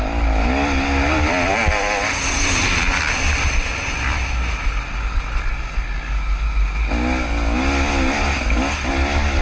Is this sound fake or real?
real